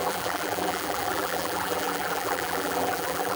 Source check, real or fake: fake